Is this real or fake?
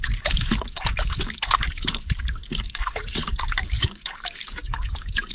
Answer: fake